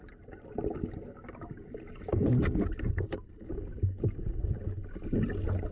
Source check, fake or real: real